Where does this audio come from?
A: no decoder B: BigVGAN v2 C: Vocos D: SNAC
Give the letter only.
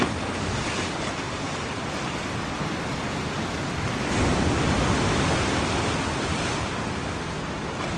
A